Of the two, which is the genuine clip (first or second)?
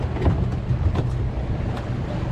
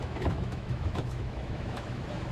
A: first